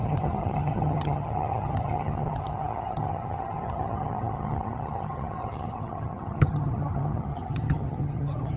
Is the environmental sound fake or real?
fake